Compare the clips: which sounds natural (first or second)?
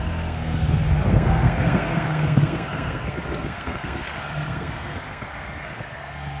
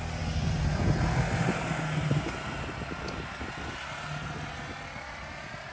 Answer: second